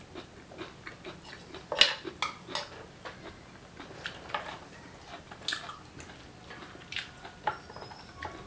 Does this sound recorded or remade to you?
recorded